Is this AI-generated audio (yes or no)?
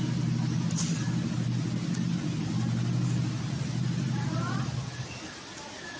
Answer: no